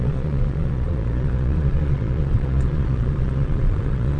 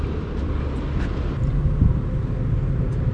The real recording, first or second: second